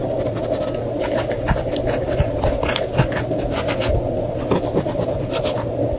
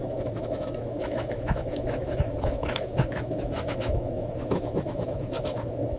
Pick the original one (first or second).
first